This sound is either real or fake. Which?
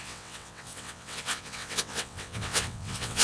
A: fake